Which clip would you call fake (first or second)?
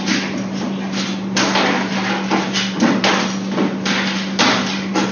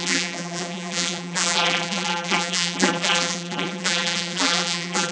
second